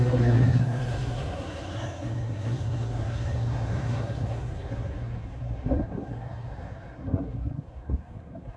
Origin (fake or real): fake